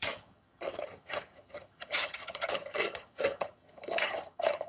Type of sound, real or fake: fake